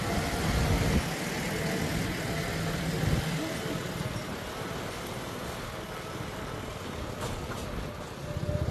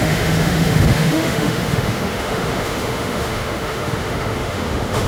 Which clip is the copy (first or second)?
second